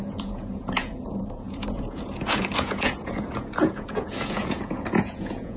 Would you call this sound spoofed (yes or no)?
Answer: yes